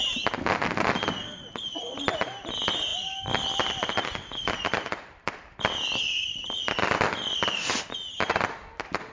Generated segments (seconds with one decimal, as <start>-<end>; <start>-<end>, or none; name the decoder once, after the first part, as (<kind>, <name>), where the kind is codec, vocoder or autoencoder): 1.2-2.2 (vocoder, BigVGAN v2); 2.9-7.8